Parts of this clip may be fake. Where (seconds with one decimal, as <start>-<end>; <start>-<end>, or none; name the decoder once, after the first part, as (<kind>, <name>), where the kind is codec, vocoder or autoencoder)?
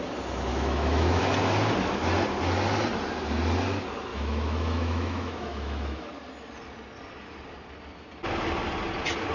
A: 0.5-1.2 (autoencoder, DAC-VAE); 4.1-6.1